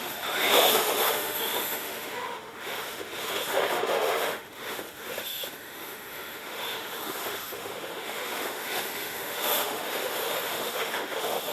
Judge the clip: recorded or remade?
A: remade